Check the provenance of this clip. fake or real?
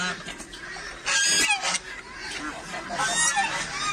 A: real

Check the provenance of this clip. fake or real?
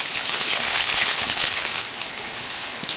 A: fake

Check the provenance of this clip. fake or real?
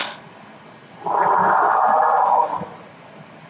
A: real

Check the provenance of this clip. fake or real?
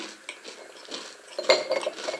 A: real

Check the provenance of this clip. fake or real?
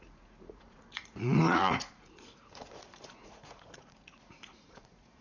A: fake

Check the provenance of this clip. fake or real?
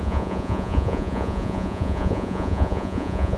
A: fake